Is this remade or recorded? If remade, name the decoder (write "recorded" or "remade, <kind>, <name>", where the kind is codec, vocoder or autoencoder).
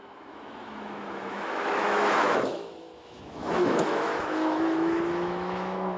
remade, autoencoder, DAC-VAE